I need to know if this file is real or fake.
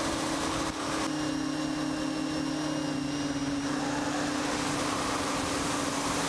real